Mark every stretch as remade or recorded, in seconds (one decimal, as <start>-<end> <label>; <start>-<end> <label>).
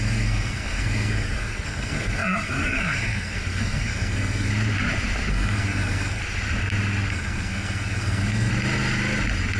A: 0.0-4.5 remade; 4.5-5.3 recorded; 5.3-6.2 remade; 6.2-7.1 recorded; 7.1-8.5 remade; 8.5-9.6 recorded